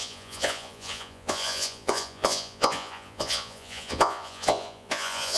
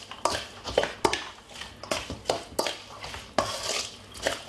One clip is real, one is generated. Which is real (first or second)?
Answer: second